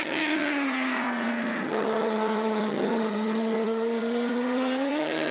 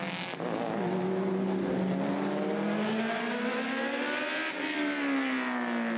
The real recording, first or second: second